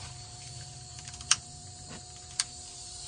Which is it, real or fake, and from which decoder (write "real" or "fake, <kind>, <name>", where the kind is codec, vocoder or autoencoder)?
fake, vocoder, BigVGAN v2